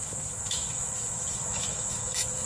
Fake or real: fake